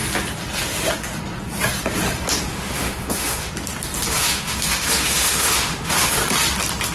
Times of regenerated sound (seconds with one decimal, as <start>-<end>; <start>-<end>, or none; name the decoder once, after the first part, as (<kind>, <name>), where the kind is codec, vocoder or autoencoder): 2.5-3.5 (autoencoder, DAC-VAE); 4.1-6.2